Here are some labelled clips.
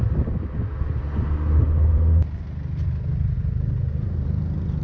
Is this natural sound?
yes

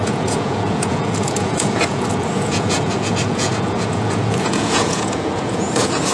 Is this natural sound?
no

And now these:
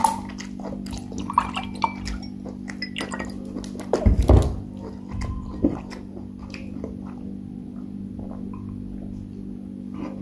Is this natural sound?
yes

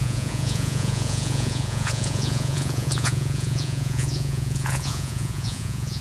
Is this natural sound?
no